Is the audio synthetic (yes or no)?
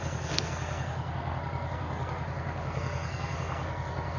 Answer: yes